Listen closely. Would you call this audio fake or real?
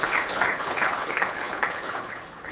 fake